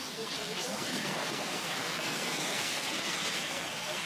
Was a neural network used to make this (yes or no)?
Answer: yes